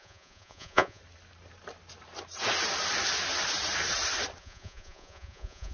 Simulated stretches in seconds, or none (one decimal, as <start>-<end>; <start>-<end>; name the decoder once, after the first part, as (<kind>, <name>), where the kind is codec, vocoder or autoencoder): 0.0-1.0 (vocoder, Vocos); 4.4-5.7